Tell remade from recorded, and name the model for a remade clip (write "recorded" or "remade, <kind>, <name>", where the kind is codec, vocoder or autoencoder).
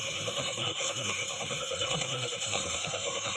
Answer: remade, codec, SNAC